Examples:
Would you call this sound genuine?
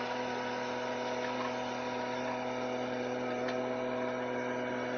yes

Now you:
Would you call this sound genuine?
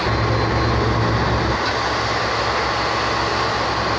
yes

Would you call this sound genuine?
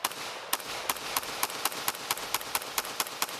yes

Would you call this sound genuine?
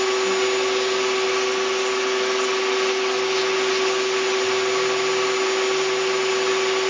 yes